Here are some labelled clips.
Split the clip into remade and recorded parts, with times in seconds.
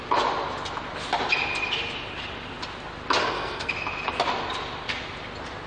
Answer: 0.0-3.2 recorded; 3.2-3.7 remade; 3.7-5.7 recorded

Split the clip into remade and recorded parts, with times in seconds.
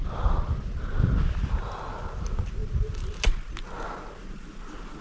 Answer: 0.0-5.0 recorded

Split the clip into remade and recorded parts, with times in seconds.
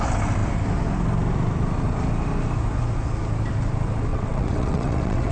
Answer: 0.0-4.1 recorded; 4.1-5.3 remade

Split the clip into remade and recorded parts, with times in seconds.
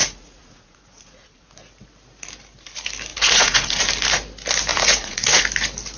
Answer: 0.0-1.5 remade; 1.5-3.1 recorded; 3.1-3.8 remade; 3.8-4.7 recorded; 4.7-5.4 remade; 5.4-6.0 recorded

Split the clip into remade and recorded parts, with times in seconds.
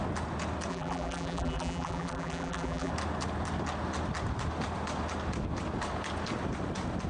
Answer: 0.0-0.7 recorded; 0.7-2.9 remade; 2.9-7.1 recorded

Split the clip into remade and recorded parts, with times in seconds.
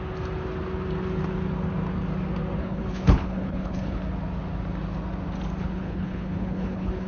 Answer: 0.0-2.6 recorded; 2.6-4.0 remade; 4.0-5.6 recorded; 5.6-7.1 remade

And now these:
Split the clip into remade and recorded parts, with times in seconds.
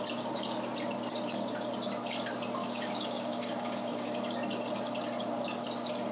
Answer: 0.0-2.6 recorded; 2.6-4.1 remade; 4.1-6.1 recorded